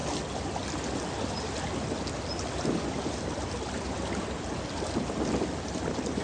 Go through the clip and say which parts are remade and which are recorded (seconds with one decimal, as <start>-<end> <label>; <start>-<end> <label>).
0.0-2.4 recorded; 2.4-6.2 remade